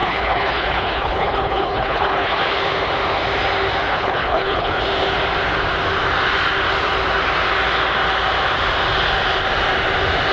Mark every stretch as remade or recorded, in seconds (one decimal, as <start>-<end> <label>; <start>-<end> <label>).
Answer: 0.0-2.4 remade; 2.4-3.9 recorded; 3.9-4.8 remade; 4.8-10.3 recorded